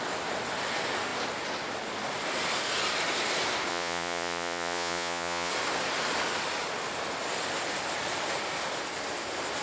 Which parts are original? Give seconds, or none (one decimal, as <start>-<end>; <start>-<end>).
0.0-3.7; 5.5-9.6